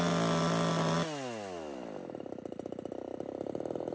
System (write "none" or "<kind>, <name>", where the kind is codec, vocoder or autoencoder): none